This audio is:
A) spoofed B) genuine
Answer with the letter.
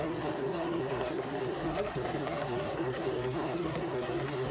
A